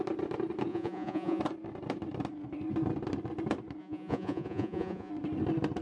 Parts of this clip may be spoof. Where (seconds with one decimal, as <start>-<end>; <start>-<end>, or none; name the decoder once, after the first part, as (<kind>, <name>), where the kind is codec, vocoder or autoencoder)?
0.7-1.4 (vocoder, Vocos); 3.8-5.1